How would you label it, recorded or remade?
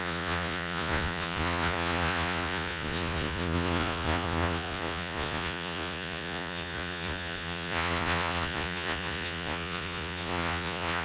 remade